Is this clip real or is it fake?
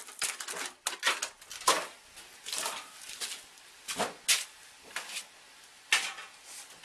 real